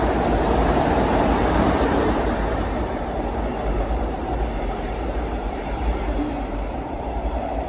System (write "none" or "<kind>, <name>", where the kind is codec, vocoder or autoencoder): vocoder, BigVGAN v2